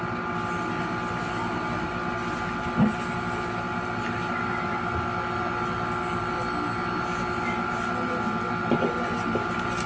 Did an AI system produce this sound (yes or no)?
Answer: no